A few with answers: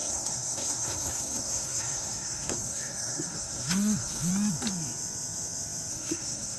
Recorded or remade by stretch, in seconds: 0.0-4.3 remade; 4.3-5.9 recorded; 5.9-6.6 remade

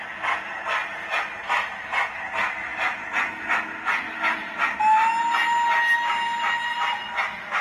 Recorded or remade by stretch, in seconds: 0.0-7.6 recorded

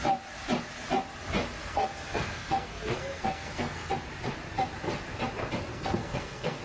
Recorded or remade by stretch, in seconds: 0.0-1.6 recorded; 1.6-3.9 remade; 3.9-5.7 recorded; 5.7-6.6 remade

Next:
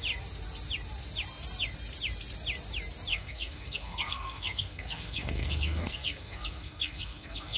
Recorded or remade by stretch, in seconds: 0.0-3.1 recorded; 3.1-7.6 remade